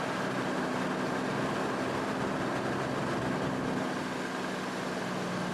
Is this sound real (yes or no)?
yes